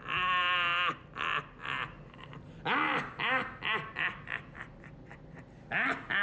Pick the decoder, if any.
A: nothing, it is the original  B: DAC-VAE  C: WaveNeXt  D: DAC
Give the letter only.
A